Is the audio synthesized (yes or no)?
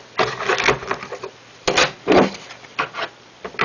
no